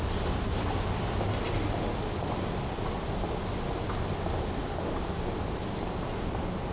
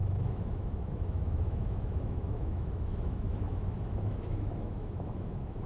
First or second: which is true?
first